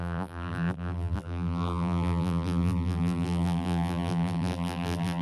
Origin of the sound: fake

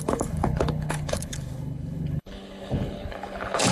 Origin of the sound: fake